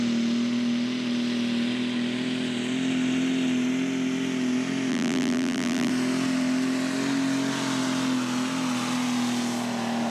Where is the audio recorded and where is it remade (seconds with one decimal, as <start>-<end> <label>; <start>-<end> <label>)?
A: 0.0-4.9 recorded; 4.9-5.9 remade; 5.9-10.1 recorded